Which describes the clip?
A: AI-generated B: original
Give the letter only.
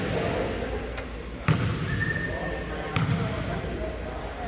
B